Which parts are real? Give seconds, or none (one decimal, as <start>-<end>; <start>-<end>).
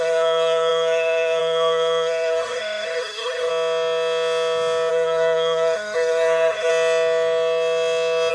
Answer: 3.5-4.9; 6.7-8.3